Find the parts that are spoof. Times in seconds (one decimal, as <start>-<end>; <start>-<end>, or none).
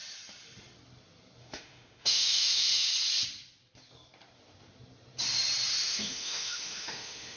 1.4-2.9; 5.8-7.4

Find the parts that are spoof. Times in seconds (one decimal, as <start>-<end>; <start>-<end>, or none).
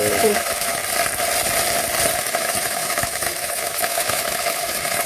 0.0-0.8; 2.2-5.1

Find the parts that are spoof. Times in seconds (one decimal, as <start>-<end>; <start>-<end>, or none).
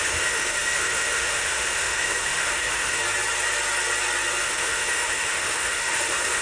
0.0-3.0; 4.4-6.4